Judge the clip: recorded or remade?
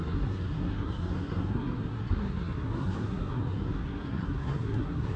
remade